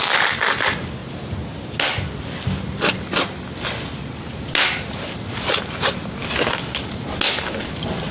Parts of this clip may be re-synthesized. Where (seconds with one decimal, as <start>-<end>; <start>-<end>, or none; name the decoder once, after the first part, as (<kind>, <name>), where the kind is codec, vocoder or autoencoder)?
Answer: none